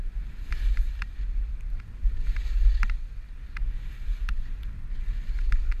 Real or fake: real